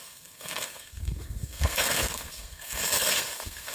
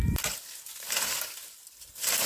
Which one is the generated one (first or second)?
first